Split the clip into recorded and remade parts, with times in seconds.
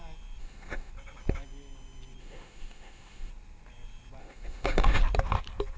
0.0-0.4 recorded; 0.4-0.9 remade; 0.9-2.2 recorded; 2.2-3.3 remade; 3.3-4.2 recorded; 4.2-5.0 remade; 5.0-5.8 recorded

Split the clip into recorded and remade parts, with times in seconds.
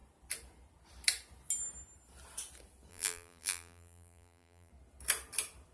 0.0-2.9 recorded; 2.9-4.7 remade; 4.7-5.7 recorded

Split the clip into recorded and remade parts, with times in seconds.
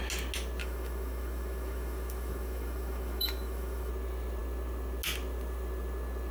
0.0-0.6 recorded; 0.6-3.9 remade; 3.9-6.3 recorded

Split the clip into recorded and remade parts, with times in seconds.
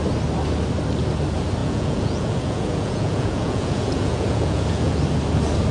0.0-1.6 recorded; 1.6-5.0 remade; 5.0-5.7 recorded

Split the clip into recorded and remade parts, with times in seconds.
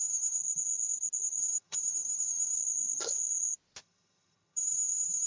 0.0-0.4 remade; 0.4-1.4 recorded; 1.4-2.6 remade; 2.6-3.8 recorded; 3.8-5.3 remade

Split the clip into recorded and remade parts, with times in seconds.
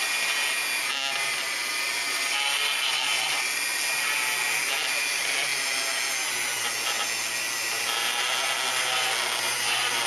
0.0-10.1 recorded